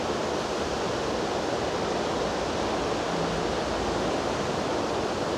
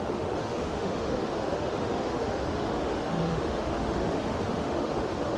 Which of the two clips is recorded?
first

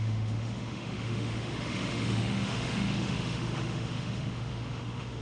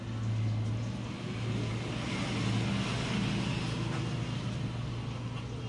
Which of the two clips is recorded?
second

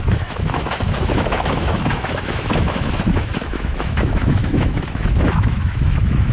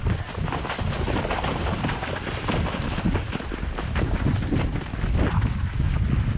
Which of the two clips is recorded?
second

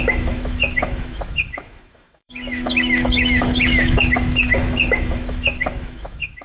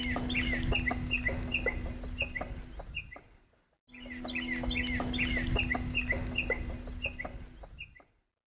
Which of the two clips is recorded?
second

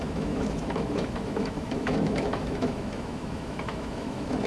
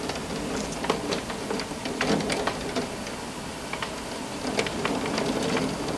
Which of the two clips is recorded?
second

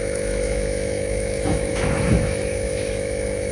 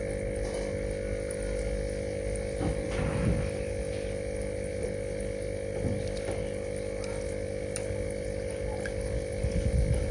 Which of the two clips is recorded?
second